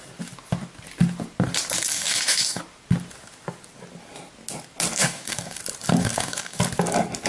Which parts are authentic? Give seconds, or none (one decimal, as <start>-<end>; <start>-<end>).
0.0-1.9; 2.6-5.0; 5.6-6.0; 6.6-7.3